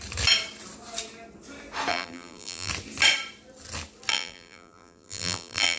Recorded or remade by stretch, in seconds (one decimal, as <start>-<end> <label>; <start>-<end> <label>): 0.0-1.9 recorded; 1.9-2.7 remade; 2.7-4.1 recorded; 4.1-5.8 remade